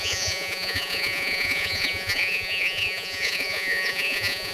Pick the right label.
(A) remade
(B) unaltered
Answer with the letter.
A